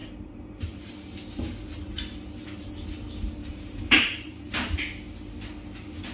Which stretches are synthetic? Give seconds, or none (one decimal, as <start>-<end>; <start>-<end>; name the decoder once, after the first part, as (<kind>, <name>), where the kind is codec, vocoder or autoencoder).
0.0-0.9 (vocoder, BigVGAN v2); 3.4-4.5